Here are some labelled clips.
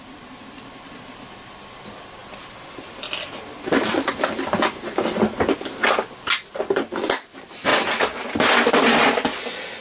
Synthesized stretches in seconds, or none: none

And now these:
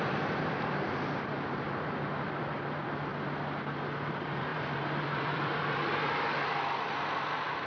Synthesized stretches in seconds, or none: 0.0-3.1 (vocoder, BigVGAN v2); 4.1-7.7

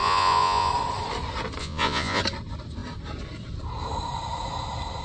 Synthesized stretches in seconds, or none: 0.0-0.7 (vocoder, Vocos); 1.6-2.2

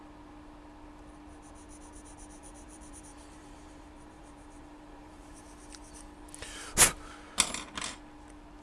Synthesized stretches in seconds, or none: 2.4-5.4 (vocoder, BigVGAN v2)